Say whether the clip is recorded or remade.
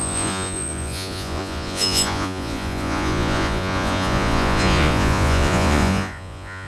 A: remade